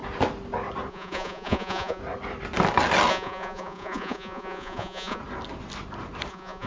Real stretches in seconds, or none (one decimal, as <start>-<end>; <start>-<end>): 0.0-0.9; 2.0-3.1; 5.2-6.3